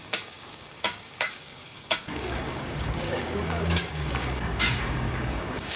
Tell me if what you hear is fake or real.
fake